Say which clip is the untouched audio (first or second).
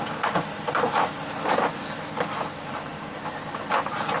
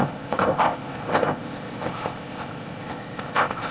first